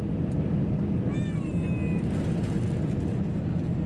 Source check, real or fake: real